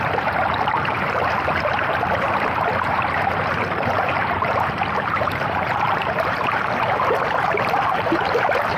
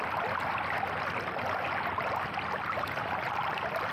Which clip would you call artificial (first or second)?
first